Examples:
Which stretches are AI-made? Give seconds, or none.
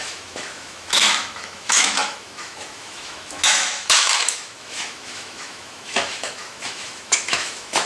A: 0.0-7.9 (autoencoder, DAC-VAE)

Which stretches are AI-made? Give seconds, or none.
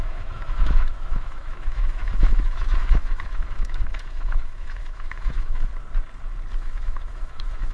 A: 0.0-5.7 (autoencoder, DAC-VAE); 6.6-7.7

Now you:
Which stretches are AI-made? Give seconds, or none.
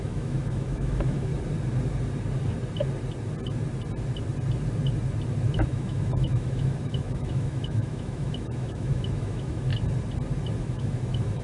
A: 0.0-1.3 (autoencoder, DAC-VAE); 5.5-9.7; 10.6-11.4